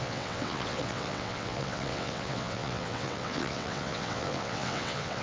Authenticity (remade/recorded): remade